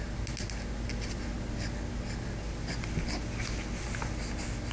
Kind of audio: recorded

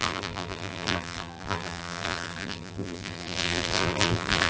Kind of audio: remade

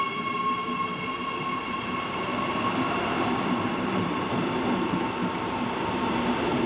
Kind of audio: remade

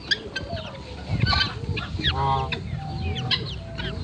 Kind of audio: recorded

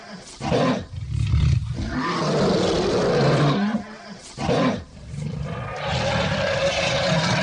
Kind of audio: remade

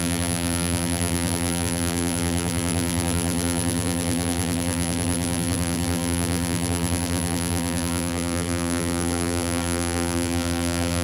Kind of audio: remade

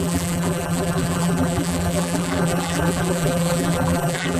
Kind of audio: remade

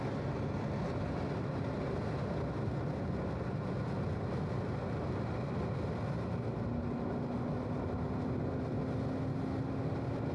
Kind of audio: recorded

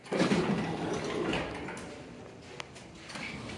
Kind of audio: recorded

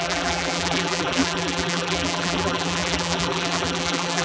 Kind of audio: remade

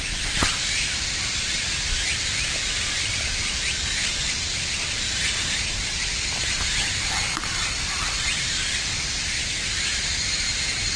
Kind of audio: remade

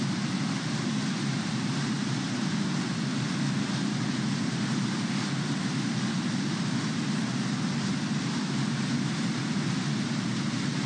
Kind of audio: recorded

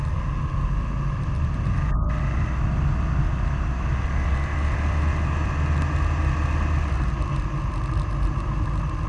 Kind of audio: recorded